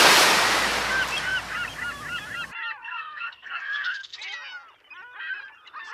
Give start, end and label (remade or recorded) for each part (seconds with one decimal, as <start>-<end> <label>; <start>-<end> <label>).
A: 0.0-2.8 recorded; 2.8-4.2 remade; 4.2-5.9 recorded